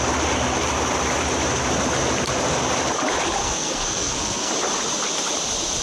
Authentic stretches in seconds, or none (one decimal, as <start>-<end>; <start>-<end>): 0.0-3.4; 4.5-5.8